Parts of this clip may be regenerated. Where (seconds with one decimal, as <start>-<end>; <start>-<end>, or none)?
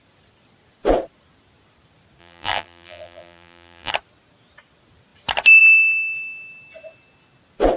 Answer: 2.2-3.9